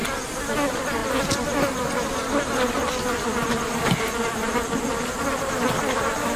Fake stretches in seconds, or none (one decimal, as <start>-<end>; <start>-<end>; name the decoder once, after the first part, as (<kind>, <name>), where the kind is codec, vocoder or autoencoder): none

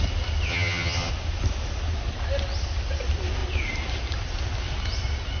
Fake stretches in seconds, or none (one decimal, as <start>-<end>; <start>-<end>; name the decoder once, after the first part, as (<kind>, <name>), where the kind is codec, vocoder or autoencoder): 0.5-1.1 (vocoder, HiFi-GAN)

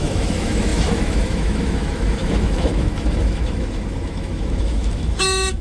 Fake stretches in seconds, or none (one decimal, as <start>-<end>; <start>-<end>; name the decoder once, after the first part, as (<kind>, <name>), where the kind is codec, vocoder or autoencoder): 0.0-5.6 (autoencoder, DAC-VAE)

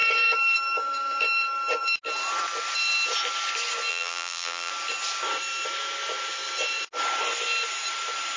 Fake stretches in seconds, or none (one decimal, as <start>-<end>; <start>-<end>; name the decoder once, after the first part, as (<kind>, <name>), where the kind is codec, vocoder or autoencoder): 3.9-4.7 (vocoder, BigVGAN v2)

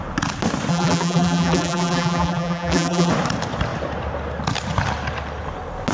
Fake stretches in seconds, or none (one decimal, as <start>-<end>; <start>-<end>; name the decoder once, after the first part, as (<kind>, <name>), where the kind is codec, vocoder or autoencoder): 0.7-3.1 (vocoder, BigVGAN v2)

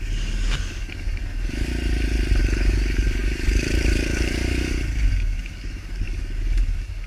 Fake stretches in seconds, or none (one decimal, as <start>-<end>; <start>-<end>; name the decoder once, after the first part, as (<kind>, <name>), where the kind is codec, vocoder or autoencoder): 0.0-1.7 (codec, DAC); 2.4-7.1